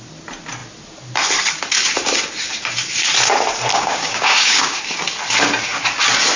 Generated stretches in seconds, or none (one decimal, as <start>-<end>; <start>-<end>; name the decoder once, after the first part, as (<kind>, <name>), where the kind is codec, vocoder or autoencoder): 3.7-4.8 (codec, DAC)